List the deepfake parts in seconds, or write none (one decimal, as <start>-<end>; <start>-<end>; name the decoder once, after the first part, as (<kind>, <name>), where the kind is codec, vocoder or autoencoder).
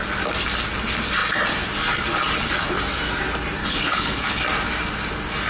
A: 3.6-4.4 (codec, HILCodec)